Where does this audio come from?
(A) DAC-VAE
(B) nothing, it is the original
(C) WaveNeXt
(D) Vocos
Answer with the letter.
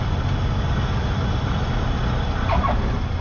B